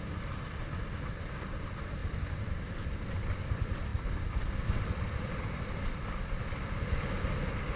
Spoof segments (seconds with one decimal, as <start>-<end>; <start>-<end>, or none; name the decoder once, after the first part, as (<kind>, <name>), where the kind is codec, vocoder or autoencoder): 2.0-3.2 (vocoder, BigVGAN v2)